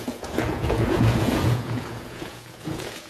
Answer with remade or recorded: remade